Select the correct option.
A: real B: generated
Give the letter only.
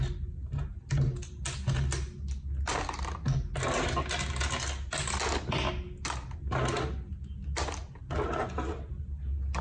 A